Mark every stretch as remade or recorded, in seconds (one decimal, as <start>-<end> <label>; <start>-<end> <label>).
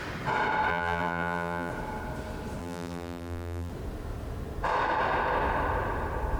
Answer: 0.0-0.7 recorded; 0.7-1.7 remade; 1.7-2.6 recorded; 2.6-3.7 remade; 3.7-6.4 recorded